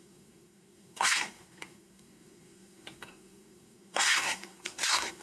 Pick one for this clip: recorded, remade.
remade